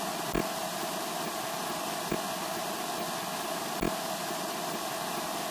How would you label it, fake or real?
real